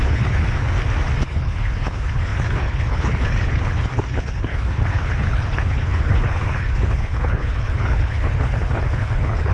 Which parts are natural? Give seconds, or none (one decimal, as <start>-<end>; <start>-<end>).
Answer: 0.4-1.2